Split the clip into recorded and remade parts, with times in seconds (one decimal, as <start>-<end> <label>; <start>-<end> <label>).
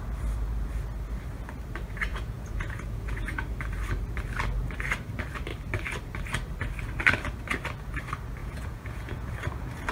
0.0-2.1 recorded; 2.1-3.4 remade; 3.4-8.4 recorded; 8.4-9.3 remade; 9.3-9.9 recorded